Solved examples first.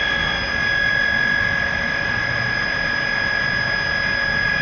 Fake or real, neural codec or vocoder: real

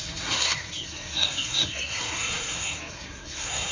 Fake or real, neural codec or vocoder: fake, codec, SNAC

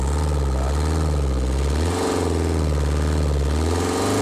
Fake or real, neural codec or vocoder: real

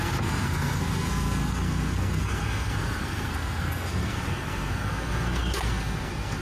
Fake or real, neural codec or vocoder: fake, codec, SNAC